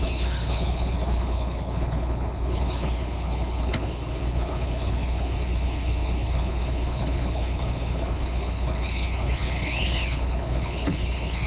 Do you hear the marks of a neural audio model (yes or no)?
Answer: yes